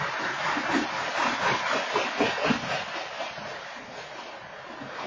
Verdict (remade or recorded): recorded